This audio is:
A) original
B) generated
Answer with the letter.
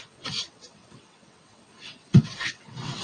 B